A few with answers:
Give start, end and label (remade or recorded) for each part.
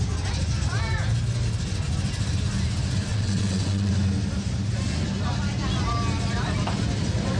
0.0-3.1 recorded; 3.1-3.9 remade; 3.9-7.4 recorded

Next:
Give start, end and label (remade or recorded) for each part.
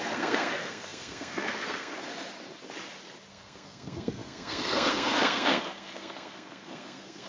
0.0-2.0 remade; 2.0-3.3 recorded; 3.3-7.3 remade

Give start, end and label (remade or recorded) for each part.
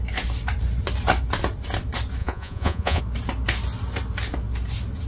0.0-2.2 recorded; 2.2-3.0 remade; 3.0-5.1 recorded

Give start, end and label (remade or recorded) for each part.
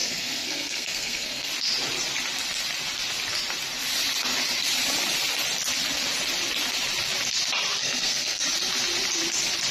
0.0-1.5 remade; 1.5-7.8 recorded; 7.8-8.4 remade; 8.4-9.7 recorded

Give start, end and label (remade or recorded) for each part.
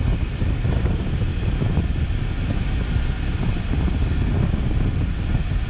0.0-5.7 recorded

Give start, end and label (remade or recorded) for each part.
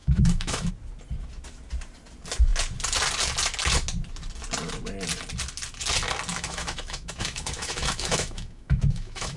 0.0-0.7 remade; 0.7-6.3 recorded; 6.3-9.4 remade